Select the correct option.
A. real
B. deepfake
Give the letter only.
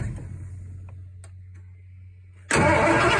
A